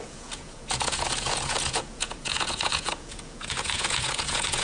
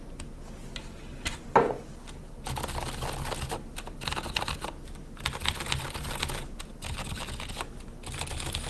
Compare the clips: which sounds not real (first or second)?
first